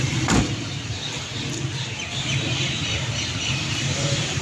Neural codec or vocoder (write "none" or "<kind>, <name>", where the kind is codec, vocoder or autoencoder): none